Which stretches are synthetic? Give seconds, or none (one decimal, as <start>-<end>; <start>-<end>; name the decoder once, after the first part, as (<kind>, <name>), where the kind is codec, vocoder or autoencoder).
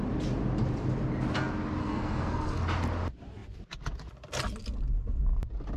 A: 1.8-2.6 (codec, SNAC)